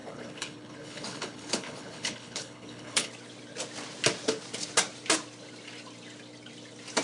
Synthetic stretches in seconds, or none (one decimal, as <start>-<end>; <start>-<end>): 0.0-3.1

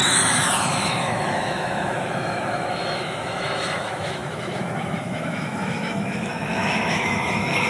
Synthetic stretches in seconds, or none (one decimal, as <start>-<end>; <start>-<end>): 0.0-7.7

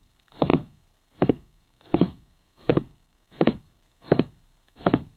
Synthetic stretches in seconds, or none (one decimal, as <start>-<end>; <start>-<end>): 0.0-5.2

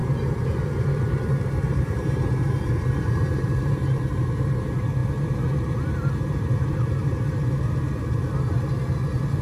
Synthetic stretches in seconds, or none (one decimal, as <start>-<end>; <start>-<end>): 0.0-9.4

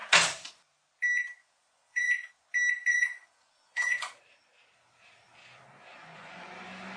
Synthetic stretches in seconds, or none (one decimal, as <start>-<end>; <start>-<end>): 1.4-2.3; 2.9-4.1; 5.9-6.5

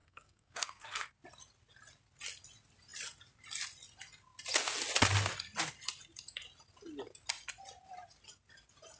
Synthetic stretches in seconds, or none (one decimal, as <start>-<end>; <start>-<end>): 0.0-1.1

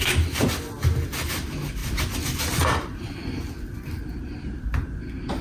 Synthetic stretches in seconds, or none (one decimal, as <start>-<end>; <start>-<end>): 1.8-5.0